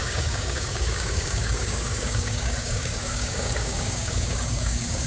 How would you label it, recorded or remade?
remade